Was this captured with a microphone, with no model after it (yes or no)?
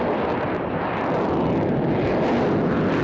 yes